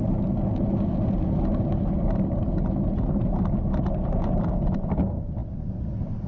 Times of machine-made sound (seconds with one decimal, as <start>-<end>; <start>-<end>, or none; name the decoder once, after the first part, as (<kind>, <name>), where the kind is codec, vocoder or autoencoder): none